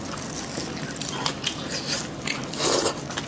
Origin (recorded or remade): recorded